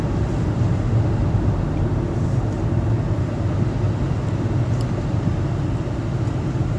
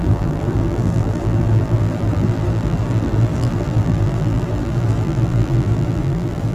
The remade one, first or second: second